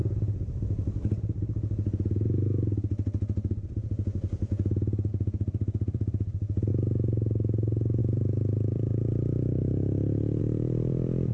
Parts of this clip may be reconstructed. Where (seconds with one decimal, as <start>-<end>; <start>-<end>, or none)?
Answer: 5.1-6.7; 8.0-8.9; 10.4-11.3